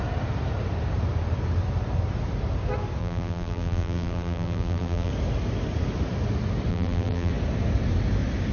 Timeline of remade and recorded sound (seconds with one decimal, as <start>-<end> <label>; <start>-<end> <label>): 0.0-3.0 recorded; 3.0-5.1 remade; 5.1-6.7 recorded; 6.7-7.3 remade; 7.3-8.5 recorded